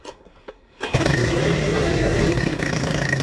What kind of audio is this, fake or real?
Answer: fake